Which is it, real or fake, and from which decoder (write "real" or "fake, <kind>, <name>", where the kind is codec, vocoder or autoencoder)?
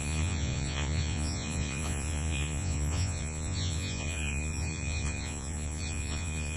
fake, vocoder, Vocos